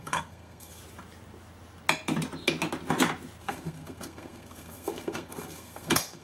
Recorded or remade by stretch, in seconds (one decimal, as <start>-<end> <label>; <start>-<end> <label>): 0.0-0.8 remade; 0.8-3.4 recorded; 3.4-6.2 remade